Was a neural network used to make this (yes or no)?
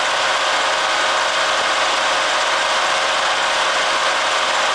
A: no